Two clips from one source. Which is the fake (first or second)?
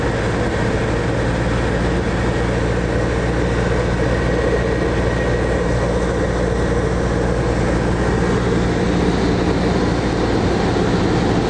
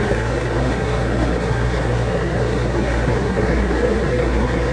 second